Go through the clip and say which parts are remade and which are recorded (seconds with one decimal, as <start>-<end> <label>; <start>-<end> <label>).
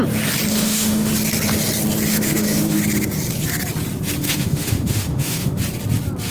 0.0-0.5 recorded; 0.5-1.1 remade; 1.1-2.1 recorded; 2.1-2.8 remade; 2.8-4.2 recorded; 4.2-5.6 remade; 5.6-6.3 recorded